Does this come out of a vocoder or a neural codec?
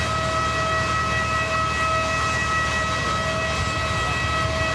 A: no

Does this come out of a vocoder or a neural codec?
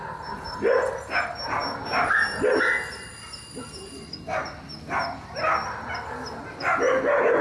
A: no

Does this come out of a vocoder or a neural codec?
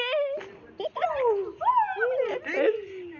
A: no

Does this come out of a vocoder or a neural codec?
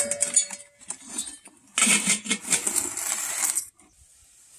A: no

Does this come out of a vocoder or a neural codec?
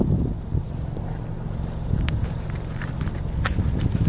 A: yes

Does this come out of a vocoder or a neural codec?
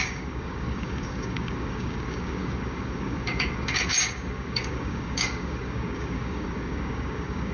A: yes